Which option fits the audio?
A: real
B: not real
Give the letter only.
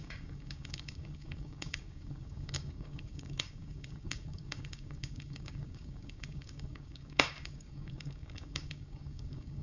B